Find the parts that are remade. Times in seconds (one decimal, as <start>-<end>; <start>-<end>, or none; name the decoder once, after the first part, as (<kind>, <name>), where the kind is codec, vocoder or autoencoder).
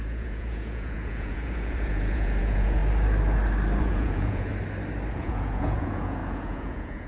0.0-2.8 (vocoder, Vocos); 3.8-4.5; 5.1-7.1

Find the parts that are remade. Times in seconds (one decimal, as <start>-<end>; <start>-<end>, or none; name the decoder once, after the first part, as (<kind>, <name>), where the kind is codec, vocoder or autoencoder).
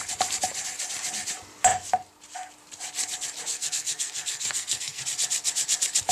3.5-5.0 (codec, SNAC)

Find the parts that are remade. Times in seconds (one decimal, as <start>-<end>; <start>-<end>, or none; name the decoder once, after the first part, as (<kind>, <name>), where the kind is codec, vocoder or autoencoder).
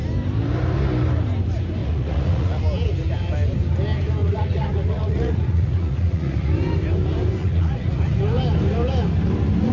1.8-2.6 (vocoder, Vocos); 4.2-6.5; 7.4-8.2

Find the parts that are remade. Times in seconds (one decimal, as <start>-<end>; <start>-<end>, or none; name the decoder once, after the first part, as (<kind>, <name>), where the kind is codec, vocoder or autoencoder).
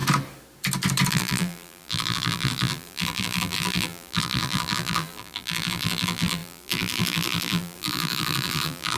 1.1-9.0 (vocoder, BigVGAN v2)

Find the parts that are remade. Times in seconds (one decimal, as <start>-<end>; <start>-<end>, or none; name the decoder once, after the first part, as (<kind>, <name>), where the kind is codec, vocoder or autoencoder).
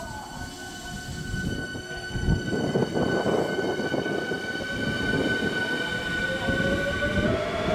none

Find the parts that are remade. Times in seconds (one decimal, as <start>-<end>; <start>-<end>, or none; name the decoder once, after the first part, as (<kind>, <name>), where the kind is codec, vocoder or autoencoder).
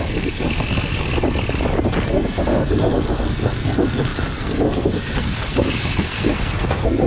0.0-1.1 (codec, SNAC); 2.1-7.1